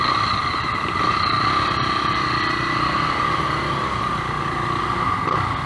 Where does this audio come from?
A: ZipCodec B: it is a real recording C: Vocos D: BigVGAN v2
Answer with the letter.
B